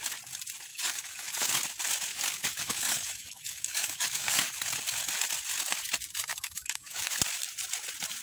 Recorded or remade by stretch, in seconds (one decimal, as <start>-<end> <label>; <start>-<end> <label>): 0.0-0.7 recorded; 0.7-1.5 remade; 1.5-2.1 recorded; 2.1-4.6 remade; 4.6-6.3 recorded; 6.3-7.1 remade; 7.1-8.2 recorded